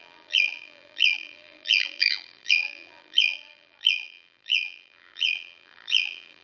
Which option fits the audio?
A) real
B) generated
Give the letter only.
B